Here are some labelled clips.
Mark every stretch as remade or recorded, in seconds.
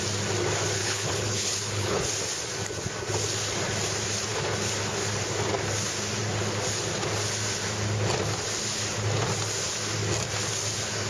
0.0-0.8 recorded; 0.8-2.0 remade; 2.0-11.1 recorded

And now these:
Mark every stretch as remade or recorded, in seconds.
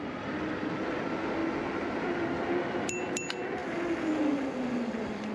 0.0-5.3 recorded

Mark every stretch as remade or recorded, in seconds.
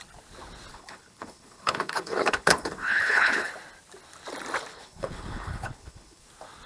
0.0-0.7 recorded; 0.7-3.5 remade; 3.5-4.7 recorded; 4.7-6.2 remade; 6.2-6.7 recorded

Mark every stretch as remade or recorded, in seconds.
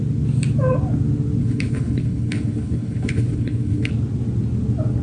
0.0-1.4 recorded; 1.4-3.9 remade; 3.9-5.0 recorded